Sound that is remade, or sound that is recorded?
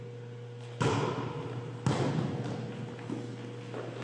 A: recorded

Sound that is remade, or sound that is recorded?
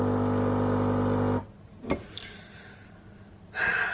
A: recorded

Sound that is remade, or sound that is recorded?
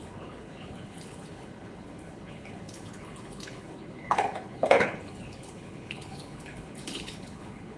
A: remade